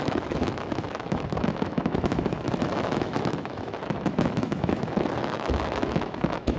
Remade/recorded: remade